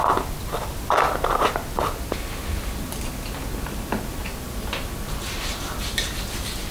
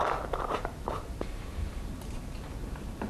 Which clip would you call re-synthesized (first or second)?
second